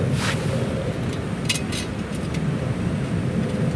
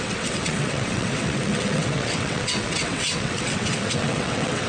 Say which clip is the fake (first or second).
second